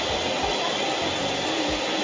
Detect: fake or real real